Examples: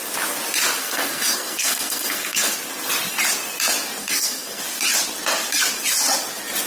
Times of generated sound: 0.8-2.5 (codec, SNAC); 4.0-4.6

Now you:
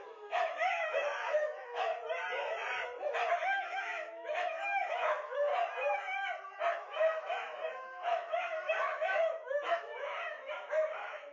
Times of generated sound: 0.0-1.9 (autoencoder, DAC-VAE); 3.3-5.5; 6.7-11.3